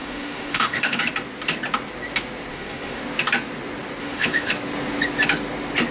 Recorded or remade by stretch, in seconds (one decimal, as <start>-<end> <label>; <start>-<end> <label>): 0.0-1.0 remade; 1.0-2.5 recorded; 2.5-3.0 remade; 3.0-4.0 recorded; 4.0-4.5 remade; 4.5-5.9 recorded